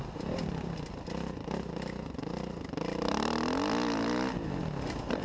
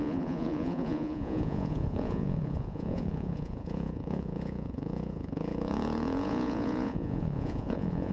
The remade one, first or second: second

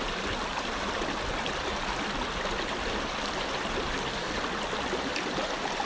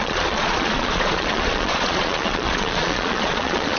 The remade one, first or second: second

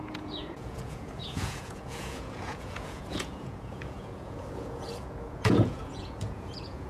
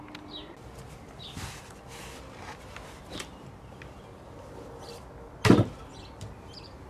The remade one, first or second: first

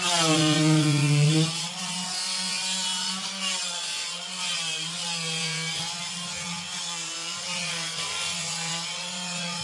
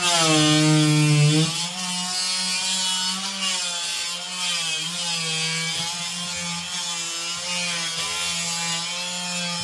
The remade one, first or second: first